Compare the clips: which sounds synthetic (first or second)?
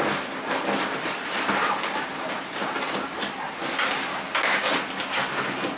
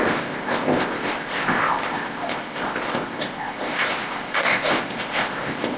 second